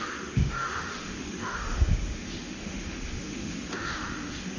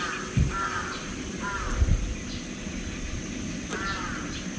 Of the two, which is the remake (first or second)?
first